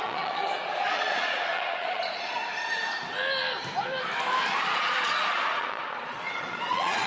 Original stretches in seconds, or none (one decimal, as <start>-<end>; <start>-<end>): 2.4-4.6